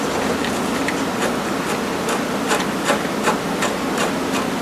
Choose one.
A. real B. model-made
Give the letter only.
A